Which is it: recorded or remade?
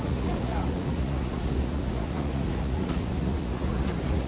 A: remade